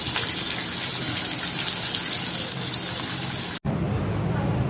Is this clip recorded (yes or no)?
yes